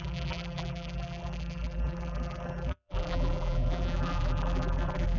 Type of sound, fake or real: fake